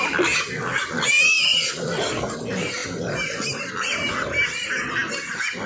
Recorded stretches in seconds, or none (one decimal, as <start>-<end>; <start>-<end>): 0.0-5.7

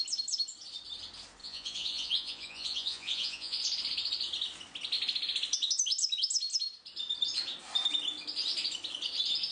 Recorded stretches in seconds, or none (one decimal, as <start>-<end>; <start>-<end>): 0.0-1.4; 3.6-9.5